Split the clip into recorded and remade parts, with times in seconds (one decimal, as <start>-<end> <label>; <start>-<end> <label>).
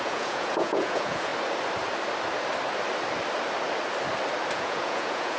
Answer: 0.0-1.3 remade; 1.3-4.5 recorded; 4.5-5.4 remade